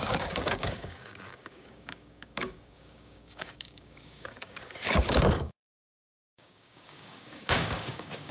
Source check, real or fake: fake